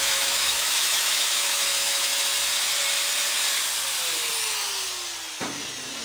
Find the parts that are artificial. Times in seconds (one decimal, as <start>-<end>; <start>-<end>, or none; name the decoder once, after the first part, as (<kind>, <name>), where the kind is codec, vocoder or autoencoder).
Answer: 0.0-2.1 (autoencoder, DAC-VAE)